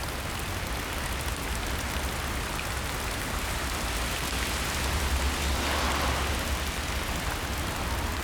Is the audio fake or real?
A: real